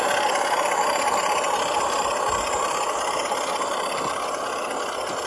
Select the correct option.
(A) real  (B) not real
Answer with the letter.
A